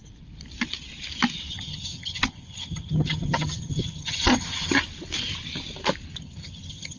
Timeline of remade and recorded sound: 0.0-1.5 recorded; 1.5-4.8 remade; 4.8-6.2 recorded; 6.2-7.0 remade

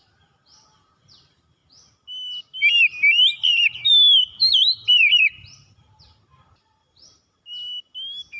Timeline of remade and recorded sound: 0.0-4.9 recorded; 4.9-6.0 remade; 6.0-8.4 recorded

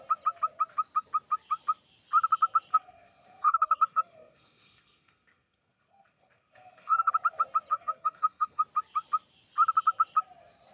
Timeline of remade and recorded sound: 0.0-2.7 recorded; 2.7-7.1 remade; 7.1-7.7 recorded; 7.7-8.6 remade; 8.6-10.7 recorded